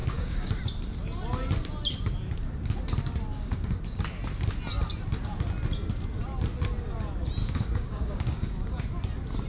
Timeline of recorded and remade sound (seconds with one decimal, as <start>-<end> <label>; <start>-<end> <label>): 0.0-0.5 remade; 0.5-3.3 recorded; 3.3-3.8 remade; 3.8-7.4 recorded; 7.4-8.8 remade; 8.8-9.5 recorded